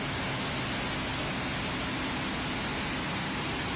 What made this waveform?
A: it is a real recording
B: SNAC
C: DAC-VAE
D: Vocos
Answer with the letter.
A